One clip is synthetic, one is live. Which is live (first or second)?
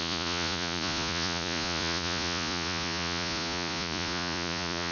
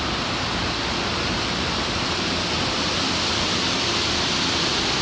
second